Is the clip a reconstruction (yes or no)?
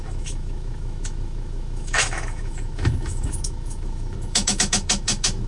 yes